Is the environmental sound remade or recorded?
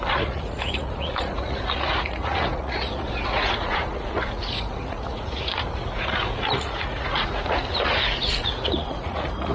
remade